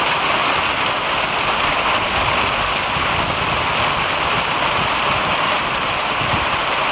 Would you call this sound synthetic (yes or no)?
no